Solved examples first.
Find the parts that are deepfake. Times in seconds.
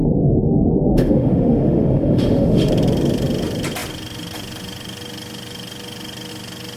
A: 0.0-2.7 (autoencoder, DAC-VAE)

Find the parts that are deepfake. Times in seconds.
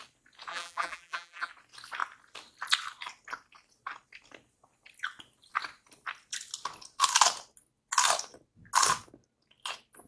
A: 0.5-1.5 (vocoder, BigVGAN v2)